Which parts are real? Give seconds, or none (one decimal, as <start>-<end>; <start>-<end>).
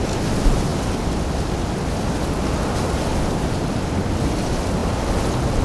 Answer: 0.0-5.6